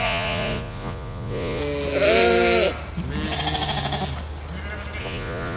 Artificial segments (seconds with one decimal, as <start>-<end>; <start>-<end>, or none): 0.0-1.6; 5.0-5.6